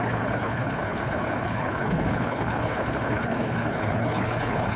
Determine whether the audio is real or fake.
fake